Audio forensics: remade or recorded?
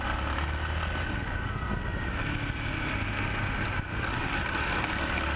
recorded